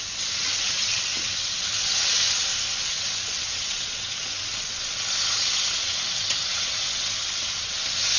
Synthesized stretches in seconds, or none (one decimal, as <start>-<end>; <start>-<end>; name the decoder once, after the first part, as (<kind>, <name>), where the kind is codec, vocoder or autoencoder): 0.0-2.4 (vocoder, WaveNeXt); 2.9-8.2